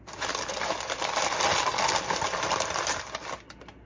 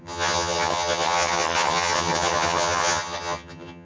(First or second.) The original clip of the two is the first